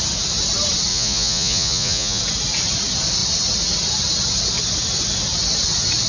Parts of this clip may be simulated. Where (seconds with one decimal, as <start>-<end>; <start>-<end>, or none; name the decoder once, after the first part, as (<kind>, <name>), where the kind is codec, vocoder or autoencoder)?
0.9-2.2 (vocoder, Vocos)